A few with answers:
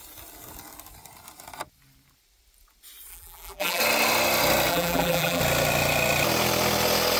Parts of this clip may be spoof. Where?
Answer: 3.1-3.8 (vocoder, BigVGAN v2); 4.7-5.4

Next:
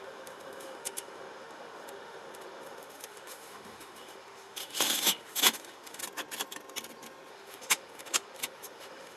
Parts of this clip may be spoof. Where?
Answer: 0.0-6.0 (autoencoder, DAC-VAE); 7.3-9.2

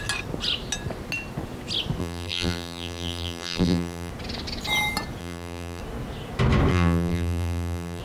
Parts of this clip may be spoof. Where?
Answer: 2.0-4.1 (vocoder, BigVGAN v2); 5.2-5.8; 6.7-8.0

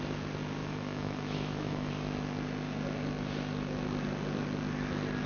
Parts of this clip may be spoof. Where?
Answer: 0.6-1.9 (autoencoder, DAC-VAE)

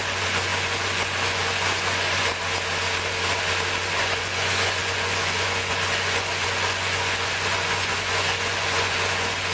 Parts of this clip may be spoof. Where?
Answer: 0.0-2.3 (vocoder, Vocos); 4.0-9.5